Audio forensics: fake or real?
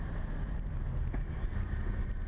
fake